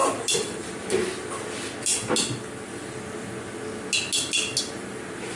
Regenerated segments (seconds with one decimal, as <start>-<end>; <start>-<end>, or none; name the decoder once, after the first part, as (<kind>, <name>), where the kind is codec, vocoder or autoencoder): 0.0-0.7 (vocoder, BigVGAN v2)